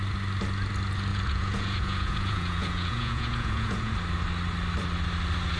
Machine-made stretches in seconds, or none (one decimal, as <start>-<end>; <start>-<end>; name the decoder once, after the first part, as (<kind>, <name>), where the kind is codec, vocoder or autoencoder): 1.1-3.9 (vocoder, Vocos)

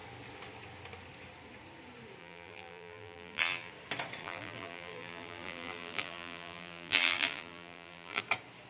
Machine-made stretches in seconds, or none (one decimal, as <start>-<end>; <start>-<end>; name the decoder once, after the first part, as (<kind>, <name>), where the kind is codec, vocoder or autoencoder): 2.2-3.7 (vocoder, BigVGAN v2); 4.2-8.2

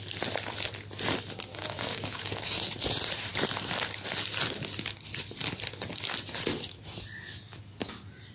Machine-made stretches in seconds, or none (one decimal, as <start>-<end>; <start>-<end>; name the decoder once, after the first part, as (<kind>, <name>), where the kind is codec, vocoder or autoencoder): 1.5-2.6 (codec, DAC)

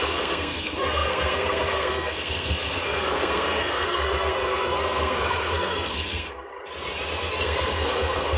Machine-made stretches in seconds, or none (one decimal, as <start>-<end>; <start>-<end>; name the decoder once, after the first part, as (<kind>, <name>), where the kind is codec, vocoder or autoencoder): 0.0-6.5 (codec, SNAC); 7.3-8.4

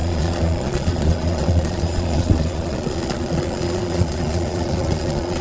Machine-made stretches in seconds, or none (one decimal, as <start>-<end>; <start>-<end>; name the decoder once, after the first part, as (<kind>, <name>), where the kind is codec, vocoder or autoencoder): 0.0-5.4 (vocoder, Vocos)